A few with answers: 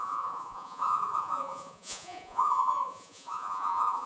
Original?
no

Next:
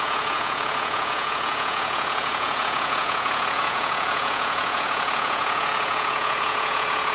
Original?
no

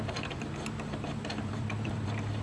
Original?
no